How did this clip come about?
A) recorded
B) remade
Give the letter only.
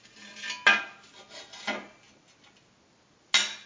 A